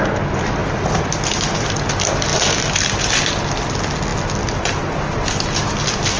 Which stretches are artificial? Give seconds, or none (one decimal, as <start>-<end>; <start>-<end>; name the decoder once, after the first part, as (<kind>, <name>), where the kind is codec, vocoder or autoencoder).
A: none